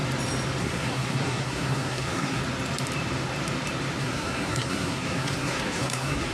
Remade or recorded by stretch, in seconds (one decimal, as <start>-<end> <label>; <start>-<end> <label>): 0.0-0.6 recorded; 0.6-2.4 remade; 2.4-4.0 recorded; 4.0-6.3 remade

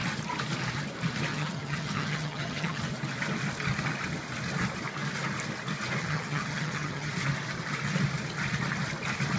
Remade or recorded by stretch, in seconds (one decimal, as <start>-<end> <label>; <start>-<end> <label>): 0.0-1.3 recorded; 1.3-2.8 remade; 2.8-6.0 recorded; 6.0-7.1 remade; 7.1-9.4 recorded

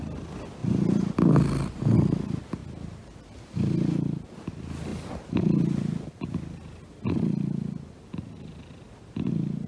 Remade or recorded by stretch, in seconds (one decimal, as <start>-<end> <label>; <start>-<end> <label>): 0.0-9.7 recorded

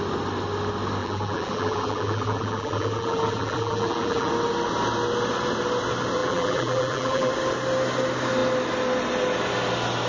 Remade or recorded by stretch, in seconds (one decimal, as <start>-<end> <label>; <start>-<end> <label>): 0.0-1.0 recorded; 1.0-4.3 remade; 4.3-6.2 recorded; 6.2-7.3 remade; 7.3-10.1 recorded